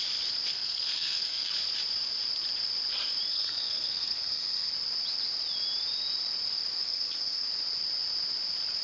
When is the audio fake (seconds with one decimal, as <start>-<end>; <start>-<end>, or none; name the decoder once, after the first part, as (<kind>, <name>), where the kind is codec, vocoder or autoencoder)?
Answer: 0.5-1.5 (codec, SNAC); 3.3-4.7; 6.8-7.5